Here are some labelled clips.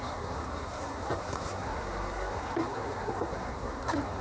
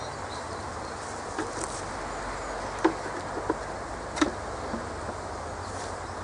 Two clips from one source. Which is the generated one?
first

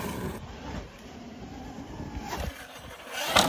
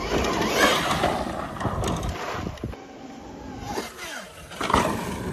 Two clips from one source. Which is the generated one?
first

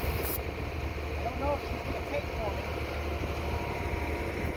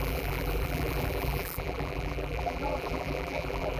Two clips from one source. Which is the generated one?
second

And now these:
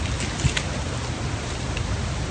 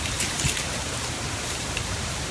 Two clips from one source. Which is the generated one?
second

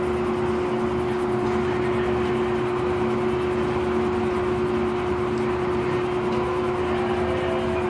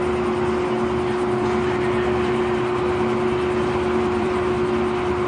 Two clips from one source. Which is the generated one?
second